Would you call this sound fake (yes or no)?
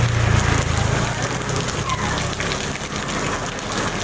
no